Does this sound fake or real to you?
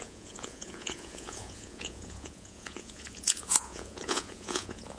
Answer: fake